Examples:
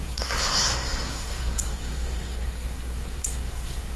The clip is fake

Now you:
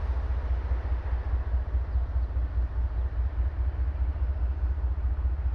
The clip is real